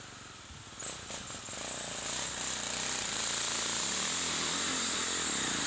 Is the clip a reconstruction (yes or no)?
no